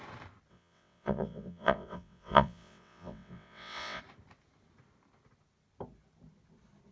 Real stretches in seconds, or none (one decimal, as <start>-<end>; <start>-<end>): 0.0-0.5; 4.0-6.9